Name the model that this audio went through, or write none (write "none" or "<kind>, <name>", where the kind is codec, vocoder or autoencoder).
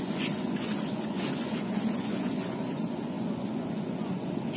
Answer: vocoder, Vocos